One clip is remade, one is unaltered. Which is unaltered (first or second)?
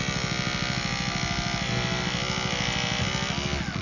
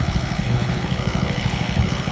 first